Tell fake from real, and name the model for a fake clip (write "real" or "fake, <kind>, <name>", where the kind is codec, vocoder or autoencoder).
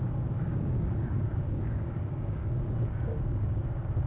fake, codec, DAC